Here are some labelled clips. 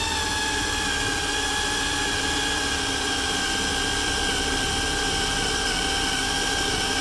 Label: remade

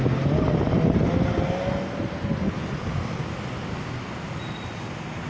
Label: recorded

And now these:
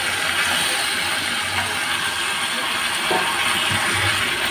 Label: recorded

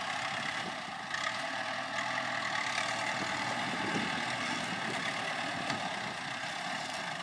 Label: recorded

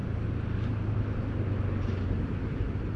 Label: recorded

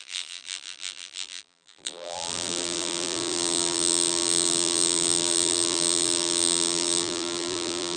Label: remade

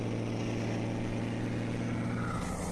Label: recorded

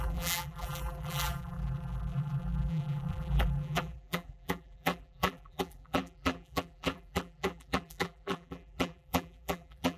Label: remade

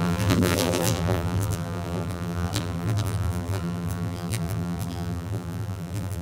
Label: remade